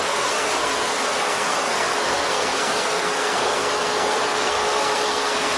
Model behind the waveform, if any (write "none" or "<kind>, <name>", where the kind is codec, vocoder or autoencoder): codec, SNAC